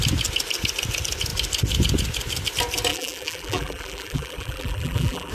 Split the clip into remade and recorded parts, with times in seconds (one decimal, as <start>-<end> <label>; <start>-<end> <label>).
0.0-2.9 recorded; 2.9-5.3 remade